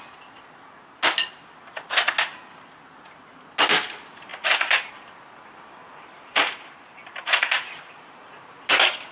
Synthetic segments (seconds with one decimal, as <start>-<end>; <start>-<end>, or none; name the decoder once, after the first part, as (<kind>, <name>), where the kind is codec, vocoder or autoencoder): 4.3-4.9 (vocoder, BigVGAN v2); 5.8-8.6